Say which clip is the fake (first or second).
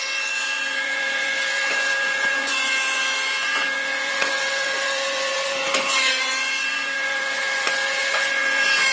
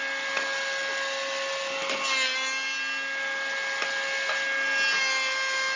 first